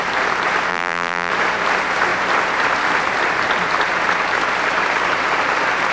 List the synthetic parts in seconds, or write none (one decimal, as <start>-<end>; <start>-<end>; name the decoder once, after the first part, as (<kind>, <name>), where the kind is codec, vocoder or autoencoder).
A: 0.7-1.3 (vocoder, BigVGAN v2)